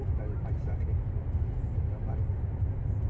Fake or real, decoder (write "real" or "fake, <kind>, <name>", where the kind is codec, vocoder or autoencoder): real